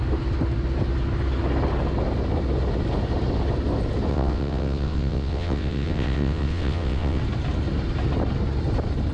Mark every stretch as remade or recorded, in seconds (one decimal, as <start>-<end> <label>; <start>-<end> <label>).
0.0-4.1 recorded; 4.1-7.2 remade; 7.2-9.1 recorded